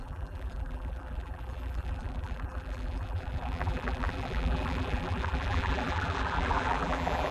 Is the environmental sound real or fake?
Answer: fake